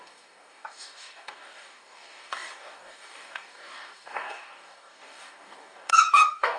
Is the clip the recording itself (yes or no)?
no